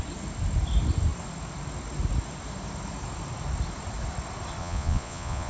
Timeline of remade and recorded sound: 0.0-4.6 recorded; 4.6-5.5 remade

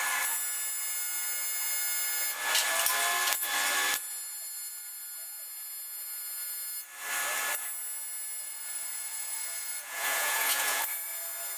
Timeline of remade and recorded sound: 0.0-8.4 recorded; 8.4-10.8 remade; 10.8-11.6 recorded

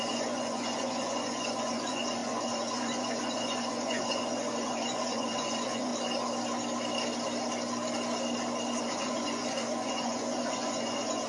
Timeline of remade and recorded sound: 0.0-5.9 remade; 5.9-8.8 recorded; 8.8-11.3 remade

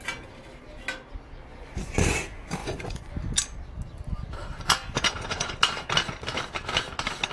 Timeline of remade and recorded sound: 0.0-1.5 recorded; 1.5-2.0 remade; 2.0-2.6 recorded; 2.6-3.2 remade; 3.2-4.8 recorded; 4.8-5.6 remade; 5.6-7.3 recorded

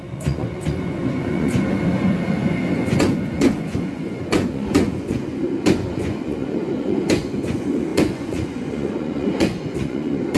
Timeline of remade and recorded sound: 0.0-10.4 remade